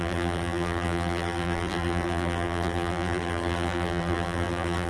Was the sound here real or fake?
fake